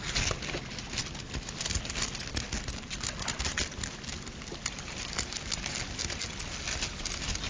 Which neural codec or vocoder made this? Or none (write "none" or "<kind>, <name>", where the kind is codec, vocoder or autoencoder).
none